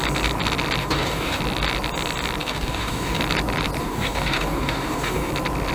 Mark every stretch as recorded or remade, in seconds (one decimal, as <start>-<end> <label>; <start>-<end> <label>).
0.0-0.8 recorded; 0.8-1.4 remade; 1.4-2.4 recorded; 2.4-3.2 remade; 3.2-3.8 recorded; 3.8-5.3 remade; 5.3-5.7 recorded